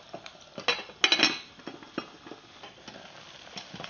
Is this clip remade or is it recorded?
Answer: recorded